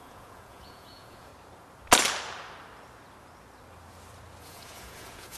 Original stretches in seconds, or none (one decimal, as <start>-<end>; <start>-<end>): 1.3-4.4